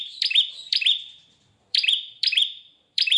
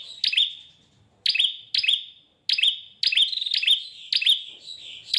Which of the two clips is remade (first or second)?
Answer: first